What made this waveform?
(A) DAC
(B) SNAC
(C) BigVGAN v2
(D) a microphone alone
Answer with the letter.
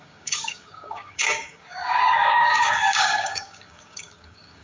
A